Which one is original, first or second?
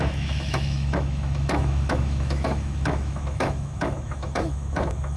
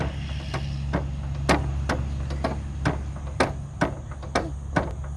second